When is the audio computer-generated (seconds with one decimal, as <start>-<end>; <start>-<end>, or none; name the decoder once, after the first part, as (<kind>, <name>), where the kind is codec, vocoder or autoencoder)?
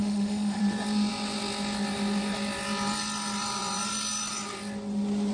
0.0-0.6 (autoencoder, DAC-VAE)